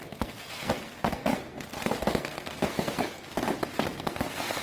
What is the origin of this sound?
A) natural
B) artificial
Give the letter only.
B